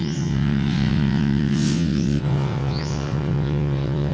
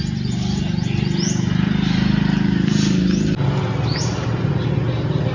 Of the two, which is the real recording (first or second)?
second